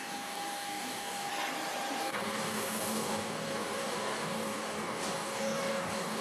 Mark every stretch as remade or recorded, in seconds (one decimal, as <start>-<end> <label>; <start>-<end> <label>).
0.0-1.3 remade; 1.3-2.0 recorded; 2.0-6.2 remade